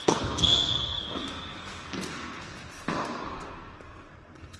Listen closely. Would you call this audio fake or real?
fake